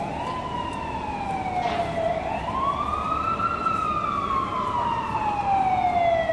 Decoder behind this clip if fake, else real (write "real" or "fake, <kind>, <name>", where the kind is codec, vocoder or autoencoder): real